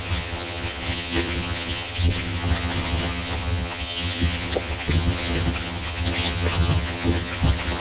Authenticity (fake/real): fake